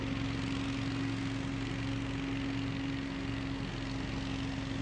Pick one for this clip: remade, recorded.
recorded